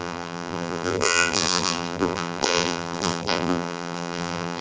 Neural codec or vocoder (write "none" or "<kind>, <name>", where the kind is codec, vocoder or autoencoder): vocoder, BigVGAN v2